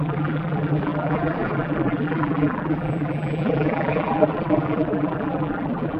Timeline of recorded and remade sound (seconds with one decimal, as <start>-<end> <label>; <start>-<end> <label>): 0.0-6.0 remade